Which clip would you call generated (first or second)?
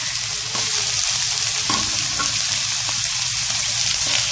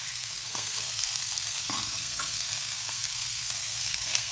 second